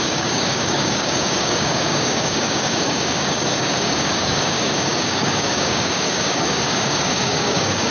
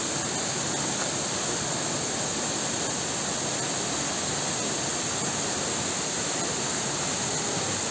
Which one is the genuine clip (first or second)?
second